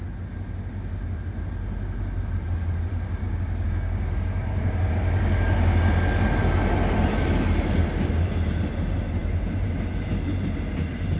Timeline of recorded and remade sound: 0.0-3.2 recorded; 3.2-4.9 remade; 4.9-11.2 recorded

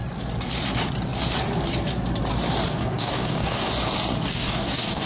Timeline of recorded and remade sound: 0.0-2.8 recorded; 2.8-3.7 remade; 3.7-4.3 recorded; 4.3-5.1 remade

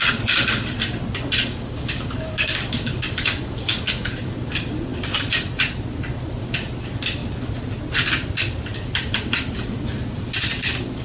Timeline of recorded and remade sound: 0.0-1.4 recorded; 1.4-4.5 remade; 4.5-11.0 recorded